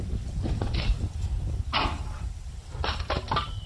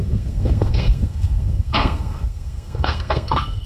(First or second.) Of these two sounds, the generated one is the second